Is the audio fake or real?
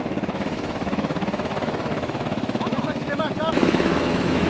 fake